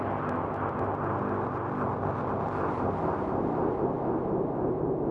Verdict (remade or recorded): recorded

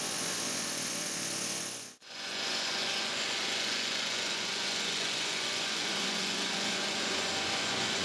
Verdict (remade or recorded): remade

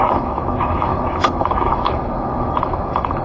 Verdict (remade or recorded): remade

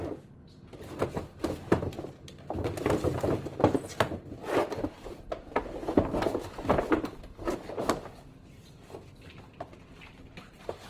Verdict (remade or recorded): recorded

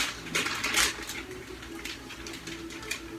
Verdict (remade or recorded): recorded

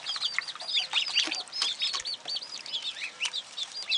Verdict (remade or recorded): recorded